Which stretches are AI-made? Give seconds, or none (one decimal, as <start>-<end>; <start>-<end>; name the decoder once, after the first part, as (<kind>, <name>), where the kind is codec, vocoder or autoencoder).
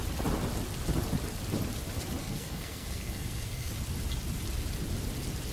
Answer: 2.2-3.7 (codec, SNAC)